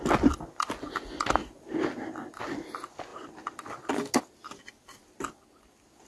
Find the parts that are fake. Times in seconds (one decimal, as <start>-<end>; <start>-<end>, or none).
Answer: none